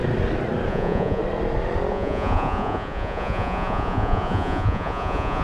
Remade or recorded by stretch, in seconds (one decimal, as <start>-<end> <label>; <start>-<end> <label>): 0.0-0.7 recorded; 0.7-1.2 remade; 1.2-1.9 recorded; 1.9-5.4 remade